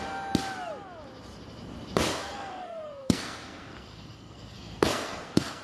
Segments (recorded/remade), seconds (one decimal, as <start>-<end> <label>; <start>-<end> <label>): 0.0-2.1 recorded; 2.1-5.6 remade